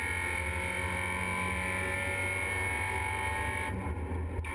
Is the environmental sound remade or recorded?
recorded